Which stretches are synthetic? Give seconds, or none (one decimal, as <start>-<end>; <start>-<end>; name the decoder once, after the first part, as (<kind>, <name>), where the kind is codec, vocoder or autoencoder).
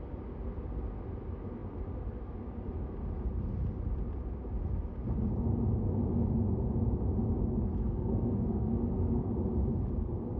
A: 7.8-9.3 (codec, SNAC)